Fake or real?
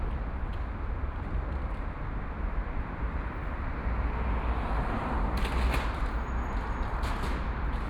real